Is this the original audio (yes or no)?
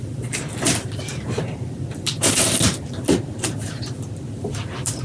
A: no